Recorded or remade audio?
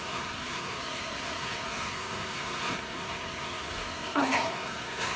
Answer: remade